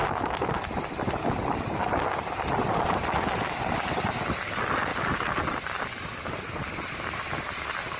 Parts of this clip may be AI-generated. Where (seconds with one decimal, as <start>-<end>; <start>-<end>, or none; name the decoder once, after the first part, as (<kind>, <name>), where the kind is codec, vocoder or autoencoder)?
none